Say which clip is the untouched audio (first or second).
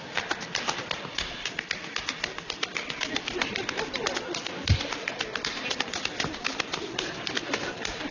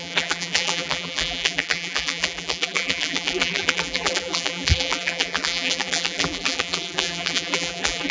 first